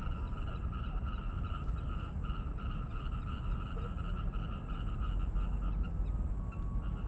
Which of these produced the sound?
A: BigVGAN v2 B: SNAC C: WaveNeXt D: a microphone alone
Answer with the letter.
D